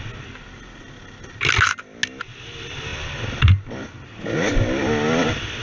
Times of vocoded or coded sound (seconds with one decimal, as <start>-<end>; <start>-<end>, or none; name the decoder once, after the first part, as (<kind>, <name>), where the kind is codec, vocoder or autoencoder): none